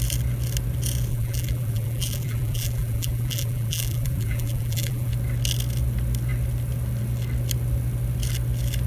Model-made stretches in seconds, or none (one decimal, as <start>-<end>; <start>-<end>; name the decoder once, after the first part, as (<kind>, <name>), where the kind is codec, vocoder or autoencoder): 1.1-5.1 (vocoder, BigVGAN v2)